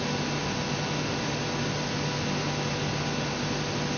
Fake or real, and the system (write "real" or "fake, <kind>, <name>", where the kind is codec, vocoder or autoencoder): real